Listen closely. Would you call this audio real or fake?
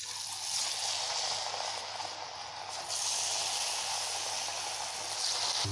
real